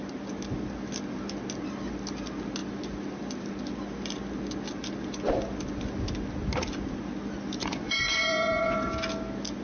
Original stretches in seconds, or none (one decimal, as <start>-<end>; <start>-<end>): 0.0-7.6; 8.9-9.6